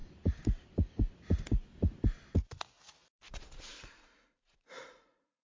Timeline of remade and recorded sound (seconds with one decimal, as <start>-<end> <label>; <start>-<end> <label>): 0.0-3.3 recorded; 3.3-5.5 remade